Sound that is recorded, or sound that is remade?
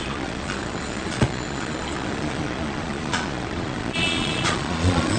remade